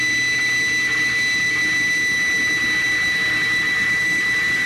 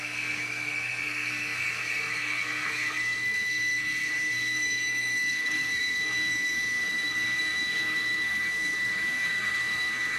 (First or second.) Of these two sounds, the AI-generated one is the second